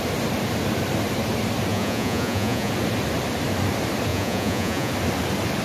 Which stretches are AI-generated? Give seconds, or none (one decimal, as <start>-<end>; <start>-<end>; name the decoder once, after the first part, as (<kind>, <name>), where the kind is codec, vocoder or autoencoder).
1.7-2.7 (vocoder, Vocos); 4.1-4.9